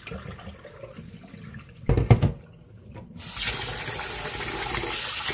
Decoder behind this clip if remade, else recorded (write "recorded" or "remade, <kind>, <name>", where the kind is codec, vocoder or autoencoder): recorded